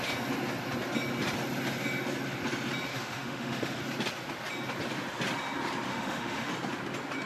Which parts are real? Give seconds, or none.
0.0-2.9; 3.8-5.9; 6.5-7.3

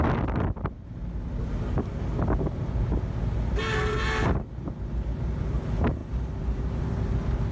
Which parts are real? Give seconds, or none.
0.0-7.5

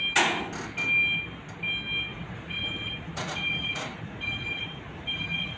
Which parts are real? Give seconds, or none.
0.0-2.1